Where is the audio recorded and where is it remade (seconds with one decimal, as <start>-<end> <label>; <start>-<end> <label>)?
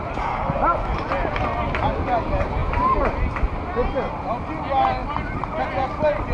0.0-6.3 recorded